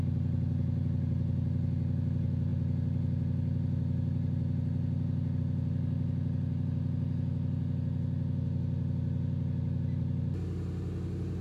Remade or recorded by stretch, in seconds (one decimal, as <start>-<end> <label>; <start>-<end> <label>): 0.0-11.4 recorded